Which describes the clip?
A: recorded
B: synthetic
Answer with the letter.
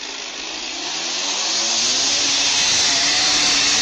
A